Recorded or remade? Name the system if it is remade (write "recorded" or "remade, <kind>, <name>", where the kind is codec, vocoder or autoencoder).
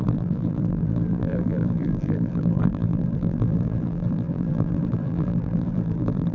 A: remade, vocoder, BigVGAN v2